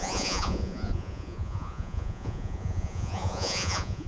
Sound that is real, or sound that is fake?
fake